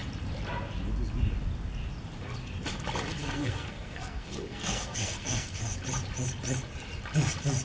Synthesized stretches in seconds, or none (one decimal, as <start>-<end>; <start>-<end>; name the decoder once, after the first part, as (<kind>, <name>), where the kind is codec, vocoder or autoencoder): 3.2-5.6 (codec, SNAC)